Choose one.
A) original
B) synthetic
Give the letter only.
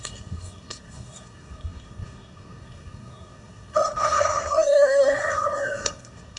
B